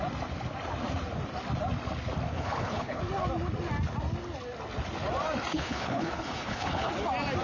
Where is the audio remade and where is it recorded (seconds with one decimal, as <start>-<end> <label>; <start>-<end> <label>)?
0.0-2.3 recorded; 2.3-3.0 remade; 3.0-5.5 recorded; 5.5-6.9 remade; 6.9-7.4 recorded